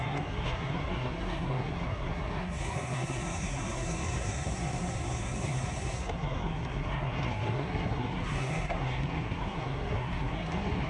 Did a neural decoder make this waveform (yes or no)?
yes